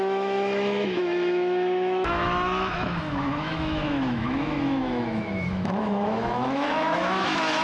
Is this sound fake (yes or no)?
yes